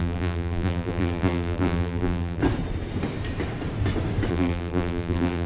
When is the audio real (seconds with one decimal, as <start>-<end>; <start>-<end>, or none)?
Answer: 2.4-4.3